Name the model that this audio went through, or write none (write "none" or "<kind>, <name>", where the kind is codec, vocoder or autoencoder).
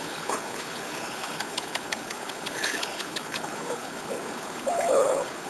codec, HILCodec